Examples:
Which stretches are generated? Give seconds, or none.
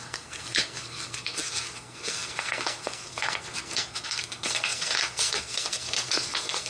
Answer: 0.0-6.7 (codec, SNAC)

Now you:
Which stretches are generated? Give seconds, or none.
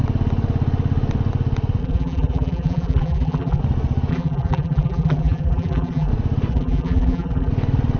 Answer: 1.8-3.6 (vocoder, BigVGAN v2); 4.1-6.1; 6.5-7.5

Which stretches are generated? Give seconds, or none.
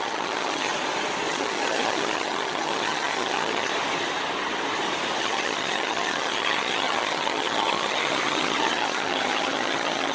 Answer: 0.0-0.7 (vocoder, HiFi-GAN); 1.3-3.7; 5.2-10.1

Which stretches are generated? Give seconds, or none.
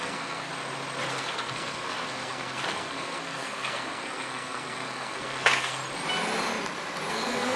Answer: 0.0-0.5 (codec, SNAC); 1.1-5.8; 7.1-7.6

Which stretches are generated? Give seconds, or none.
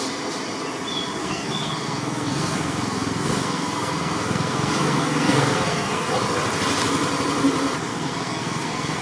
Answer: 1.2-6.1 (codec, SNAC); 7.9-9.0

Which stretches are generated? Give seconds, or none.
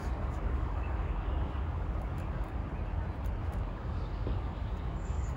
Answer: 0.0-2.6 (codec, DAC); 3.4-5.4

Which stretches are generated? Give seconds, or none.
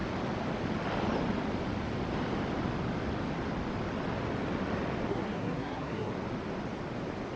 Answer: 5.1-6.1 (codec, SNAC)